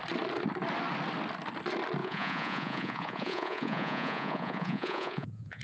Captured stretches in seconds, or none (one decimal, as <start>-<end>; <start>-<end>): 0.0-2.0